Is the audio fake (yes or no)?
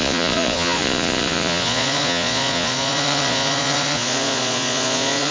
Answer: yes